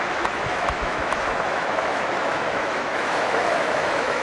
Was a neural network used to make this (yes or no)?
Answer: yes